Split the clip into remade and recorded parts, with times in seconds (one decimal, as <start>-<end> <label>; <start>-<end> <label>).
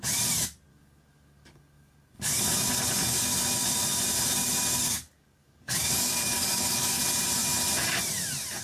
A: 0.0-0.7 recorded; 0.7-2.4 remade; 2.4-4.8 recorded; 4.8-7.0 remade; 7.0-8.6 recorded